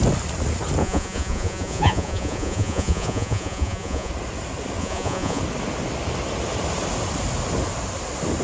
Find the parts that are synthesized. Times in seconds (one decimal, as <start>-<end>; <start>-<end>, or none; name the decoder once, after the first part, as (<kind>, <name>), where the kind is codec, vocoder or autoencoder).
0.8-4.1 (vocoder, Vocos); 4.8-5.4